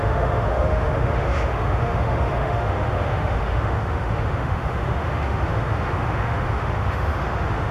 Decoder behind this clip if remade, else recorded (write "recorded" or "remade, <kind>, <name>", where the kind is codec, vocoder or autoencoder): remade, autoencoder, DAC-VAE